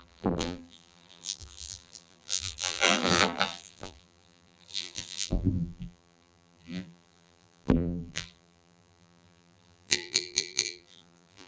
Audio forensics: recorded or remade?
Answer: remade